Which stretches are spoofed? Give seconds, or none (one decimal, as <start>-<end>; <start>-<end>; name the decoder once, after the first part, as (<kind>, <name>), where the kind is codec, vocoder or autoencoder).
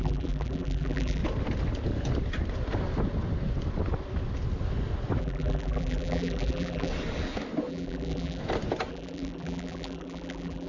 0.0-1.2 (vocoder, BigVGAN v2); 5.2-6.9; 7.7-8.4; 8.9-10.7